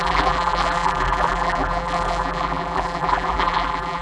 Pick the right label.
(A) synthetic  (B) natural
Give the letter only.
A